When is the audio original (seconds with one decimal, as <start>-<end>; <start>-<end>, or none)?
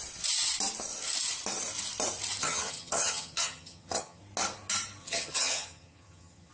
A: 0.0-2.4; 4.2-5.0